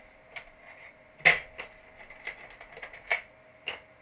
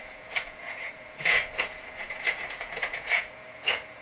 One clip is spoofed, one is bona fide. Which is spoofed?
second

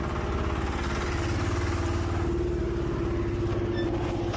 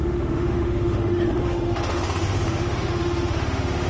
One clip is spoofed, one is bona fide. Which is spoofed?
second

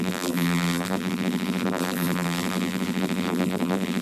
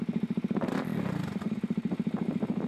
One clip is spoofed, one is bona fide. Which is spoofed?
first